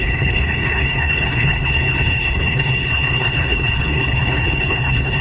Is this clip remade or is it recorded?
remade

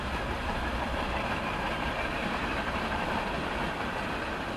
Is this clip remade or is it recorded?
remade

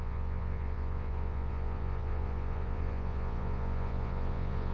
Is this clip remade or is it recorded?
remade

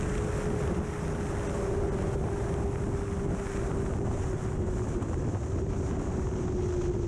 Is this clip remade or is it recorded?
recorded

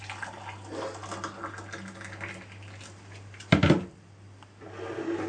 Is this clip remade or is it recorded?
recorded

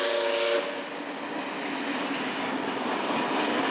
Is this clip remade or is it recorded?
recorded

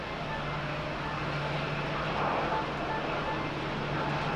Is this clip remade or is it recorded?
recorded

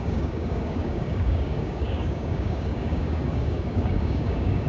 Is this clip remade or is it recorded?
remade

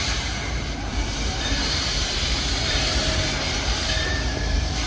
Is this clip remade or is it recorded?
remade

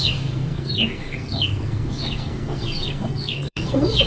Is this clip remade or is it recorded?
remade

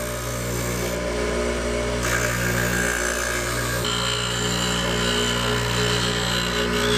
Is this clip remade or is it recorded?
recorded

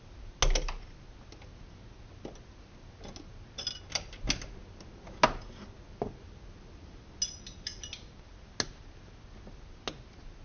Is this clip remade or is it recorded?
recorded